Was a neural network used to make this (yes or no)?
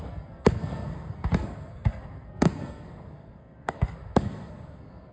yes